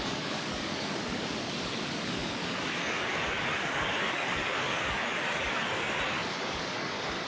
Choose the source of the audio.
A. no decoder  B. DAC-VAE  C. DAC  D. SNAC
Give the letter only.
C